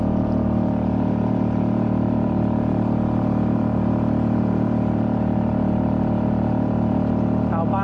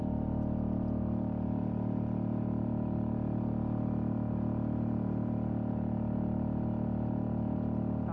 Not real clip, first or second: first